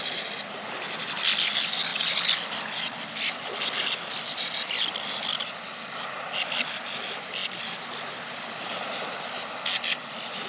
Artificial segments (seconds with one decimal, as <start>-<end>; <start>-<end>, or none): none